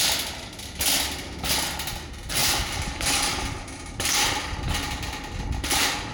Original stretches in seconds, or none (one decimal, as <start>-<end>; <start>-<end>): 0.0-2.4; 4.1-6.1